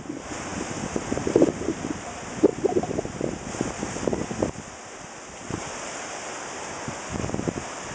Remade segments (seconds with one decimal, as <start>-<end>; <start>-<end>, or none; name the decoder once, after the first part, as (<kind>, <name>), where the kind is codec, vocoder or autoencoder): none